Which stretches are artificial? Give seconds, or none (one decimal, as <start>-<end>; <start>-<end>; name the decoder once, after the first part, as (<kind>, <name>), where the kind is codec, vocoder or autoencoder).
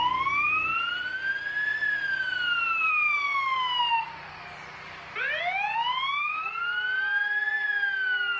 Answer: none